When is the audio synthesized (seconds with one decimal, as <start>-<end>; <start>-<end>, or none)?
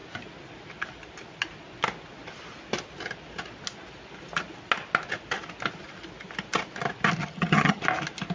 7.2-7.8